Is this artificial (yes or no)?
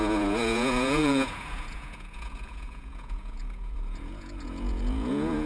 yes